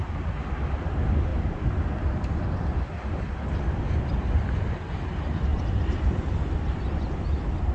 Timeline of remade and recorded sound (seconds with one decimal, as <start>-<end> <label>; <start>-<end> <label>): 0.0-7.7 recorded